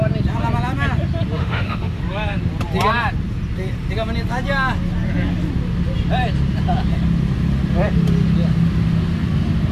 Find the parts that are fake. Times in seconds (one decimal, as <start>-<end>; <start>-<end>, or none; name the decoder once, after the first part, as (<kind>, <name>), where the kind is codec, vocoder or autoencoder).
1.4-2.0 (autoencoder, DAC-VAE)